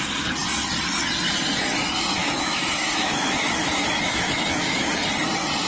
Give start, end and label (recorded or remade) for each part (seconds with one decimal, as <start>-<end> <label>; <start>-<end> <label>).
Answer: 0.0-2.2 recorded; 2.2-4.9 remade; 4.9-5.7 recorded